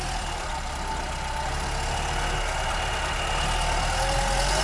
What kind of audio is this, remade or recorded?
recorded